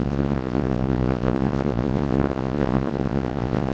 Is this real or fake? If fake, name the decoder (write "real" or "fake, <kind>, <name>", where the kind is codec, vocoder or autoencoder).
fake, vocoder, Vocos